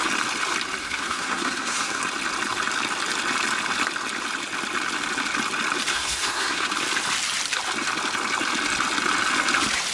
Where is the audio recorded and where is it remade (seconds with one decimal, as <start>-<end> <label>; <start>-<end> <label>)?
0.0-0.8 recorded; 0.8-2.0 remade; 2.0-5.9 recorded; 5.9-6.7 remade; 6.7-9.9 recorded